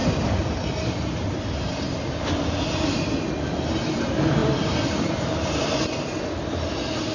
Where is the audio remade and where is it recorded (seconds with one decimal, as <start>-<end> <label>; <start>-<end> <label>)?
0.0-4.4 recorded; 4.4-5.2 remade; 5.2-7.1 recorded